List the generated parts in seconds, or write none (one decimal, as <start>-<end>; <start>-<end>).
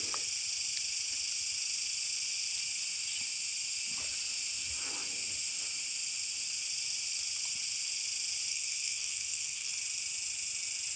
8.5-9.7